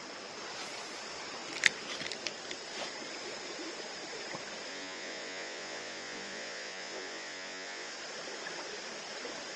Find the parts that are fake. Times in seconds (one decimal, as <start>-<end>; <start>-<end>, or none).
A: 4.7-7.9